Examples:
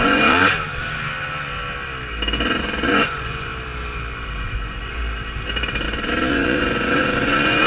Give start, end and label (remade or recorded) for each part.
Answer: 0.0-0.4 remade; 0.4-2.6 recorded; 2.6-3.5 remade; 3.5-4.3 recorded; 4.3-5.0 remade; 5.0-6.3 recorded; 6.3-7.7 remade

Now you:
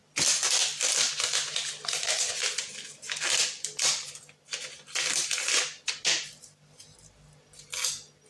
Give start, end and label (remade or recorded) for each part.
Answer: 0.0-8.3 recorded

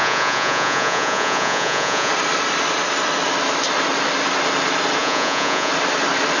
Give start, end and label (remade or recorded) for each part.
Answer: 0.0-2.1 remade; 2.1-5.0 recorded; 5.0-5.7 remade; 5.7-6.4 recorded

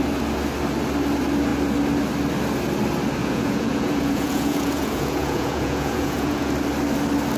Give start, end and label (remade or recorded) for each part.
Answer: 0.0-3.2 recorded; 3.2-6.5 remade; 6.5-7.4 recorded

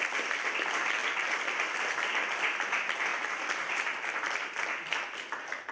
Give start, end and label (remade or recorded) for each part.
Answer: 0.0-5.7 recorded

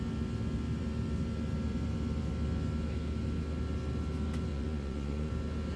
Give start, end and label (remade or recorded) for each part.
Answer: 0.0-4.5 recorded; 4.5-5.3 remade; 5.3-5.8 recorded

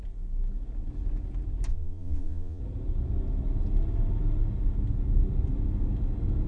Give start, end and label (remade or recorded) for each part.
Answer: 0.0-1.7 recorded; 1.7-2.6 remade; 2.6-6.5 recorded